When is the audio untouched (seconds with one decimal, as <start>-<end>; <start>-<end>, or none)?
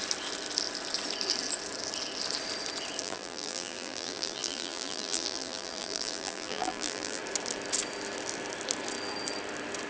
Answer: 0.0-3.0; 7.2-9.9